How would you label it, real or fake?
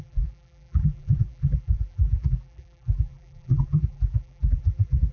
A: fake